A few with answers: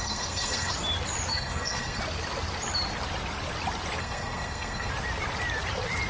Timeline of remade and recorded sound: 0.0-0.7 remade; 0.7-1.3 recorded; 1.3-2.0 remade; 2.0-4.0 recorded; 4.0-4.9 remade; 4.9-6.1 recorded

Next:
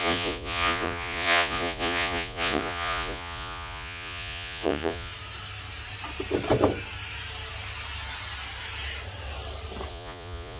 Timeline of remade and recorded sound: 0.0-5.1 remade; 5.1-9.9 recorded; 9.9-10.6 remade

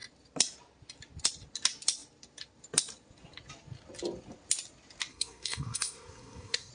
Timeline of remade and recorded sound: 0.0-5.1 recorded; 5.1-6.7 remade

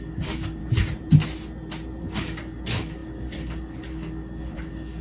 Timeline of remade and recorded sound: 0.0-0.6 remade; 0.6-2.0 recorded; 2.0-5.0 remade

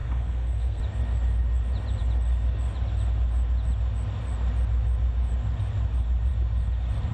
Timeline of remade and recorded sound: 0.0-0.8 remade; 0.8-7.1 recorded

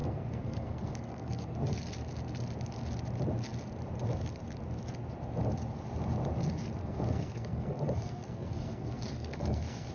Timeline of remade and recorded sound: 0.0-1.8 remade; 1.8-6.8 recorded; 6.8-9.9 remade